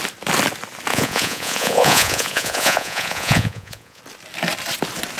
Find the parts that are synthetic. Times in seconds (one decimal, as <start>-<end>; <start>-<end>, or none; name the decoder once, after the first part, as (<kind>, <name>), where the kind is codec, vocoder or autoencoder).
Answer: 0.9-4.0 (vocoder, Vocos)